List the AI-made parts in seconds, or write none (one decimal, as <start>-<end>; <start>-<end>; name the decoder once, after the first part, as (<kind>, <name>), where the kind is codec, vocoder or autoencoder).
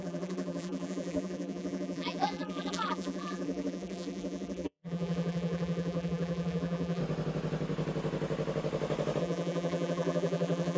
0.0-7.0 (vocoder, BigVGAN v2); 9.2-10.8